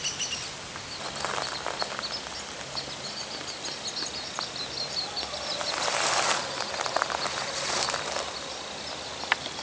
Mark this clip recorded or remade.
recorded